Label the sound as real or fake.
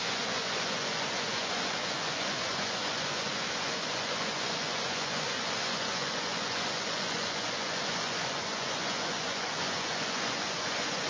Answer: fake